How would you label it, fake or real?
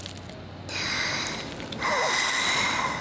real